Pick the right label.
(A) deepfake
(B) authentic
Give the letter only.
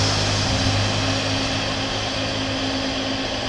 B